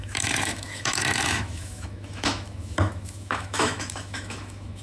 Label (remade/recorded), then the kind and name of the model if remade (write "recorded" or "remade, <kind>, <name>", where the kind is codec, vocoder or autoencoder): remade, autoencoder, DAC-VAE